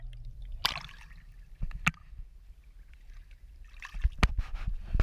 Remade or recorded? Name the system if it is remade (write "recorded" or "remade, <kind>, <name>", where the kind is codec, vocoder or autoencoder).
recorded